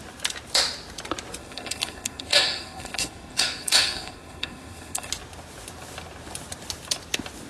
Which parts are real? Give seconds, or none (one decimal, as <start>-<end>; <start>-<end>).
0.0-1.4; 5.1-7.5